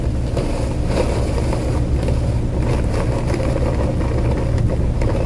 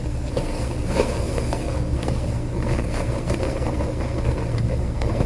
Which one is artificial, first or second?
second